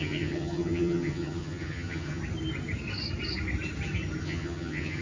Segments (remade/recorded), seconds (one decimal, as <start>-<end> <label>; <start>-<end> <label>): 0.0-2.2 remade; 2.2-4.2 recorded; 4.2-5.0 remade